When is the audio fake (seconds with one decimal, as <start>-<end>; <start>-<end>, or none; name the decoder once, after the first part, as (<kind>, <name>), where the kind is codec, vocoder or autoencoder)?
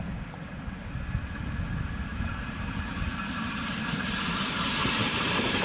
2.1-5.6 (vocoder, BigVGAN v2)